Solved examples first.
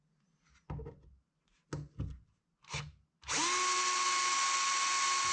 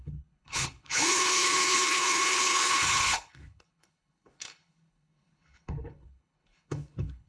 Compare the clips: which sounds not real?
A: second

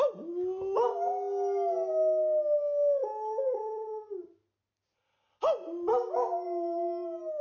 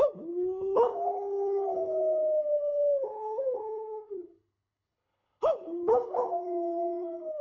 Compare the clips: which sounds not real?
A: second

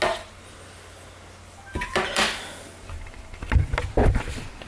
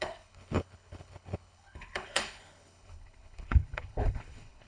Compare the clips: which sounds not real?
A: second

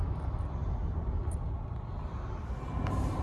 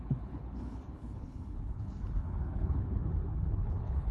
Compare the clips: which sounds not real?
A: second